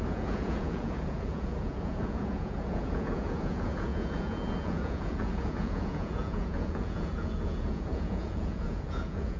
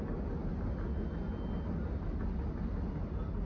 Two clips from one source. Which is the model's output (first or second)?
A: first